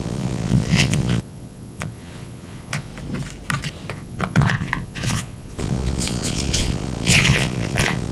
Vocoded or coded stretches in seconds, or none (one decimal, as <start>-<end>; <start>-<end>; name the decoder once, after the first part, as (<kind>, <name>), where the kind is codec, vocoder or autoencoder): 0.0-2.9 (vocoder, Vocos); 3.9-8.1